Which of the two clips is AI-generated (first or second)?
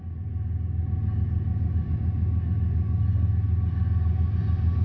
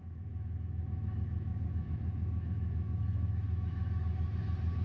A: second